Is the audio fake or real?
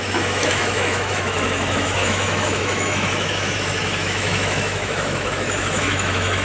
fake